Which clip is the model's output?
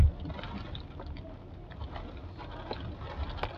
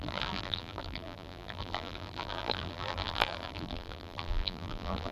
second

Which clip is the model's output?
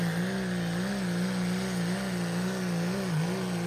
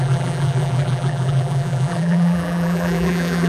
second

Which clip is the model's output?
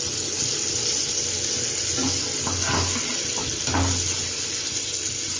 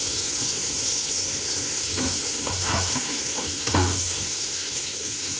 second